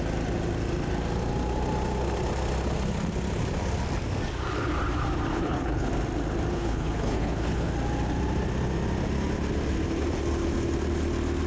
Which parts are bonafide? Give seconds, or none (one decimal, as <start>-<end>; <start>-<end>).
0.0-5.3; 5.9-6.5; 7.7-11.5